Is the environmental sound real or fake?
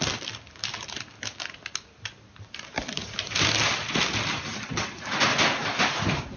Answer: real